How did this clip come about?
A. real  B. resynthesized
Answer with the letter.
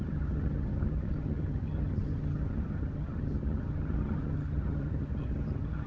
B